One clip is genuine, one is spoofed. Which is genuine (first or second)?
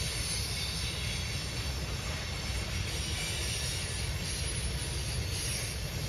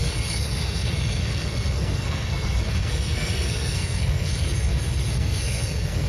first